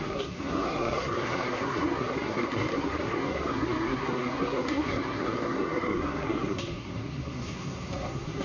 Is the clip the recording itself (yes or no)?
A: no